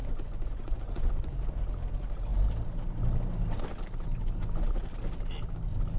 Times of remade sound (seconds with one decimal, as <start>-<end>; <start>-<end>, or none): 0.0-1.3